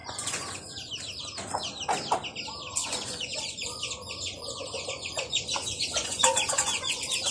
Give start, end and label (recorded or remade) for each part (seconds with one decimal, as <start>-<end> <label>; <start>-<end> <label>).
0.0-0.9 remade; 0.9-2.8 recorded; 2.8-7.3 remade